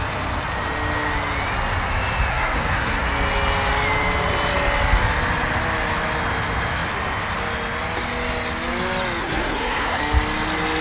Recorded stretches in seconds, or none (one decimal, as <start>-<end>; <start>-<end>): 0.0-2.3; 3.0-9.2; 10.0-10.8